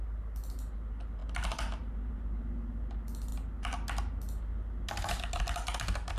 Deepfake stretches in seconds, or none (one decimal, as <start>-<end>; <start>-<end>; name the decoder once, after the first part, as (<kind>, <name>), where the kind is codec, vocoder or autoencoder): none